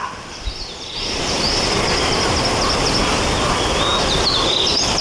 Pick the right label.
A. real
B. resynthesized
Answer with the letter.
A